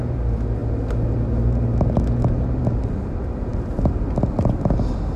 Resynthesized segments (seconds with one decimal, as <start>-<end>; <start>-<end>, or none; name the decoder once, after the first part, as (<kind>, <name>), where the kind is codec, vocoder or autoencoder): none